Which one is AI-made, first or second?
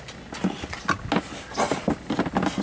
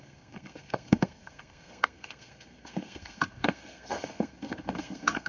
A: second